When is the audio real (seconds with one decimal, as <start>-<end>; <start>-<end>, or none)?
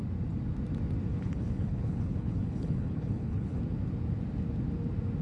0.0-1.1; 3.6-5.2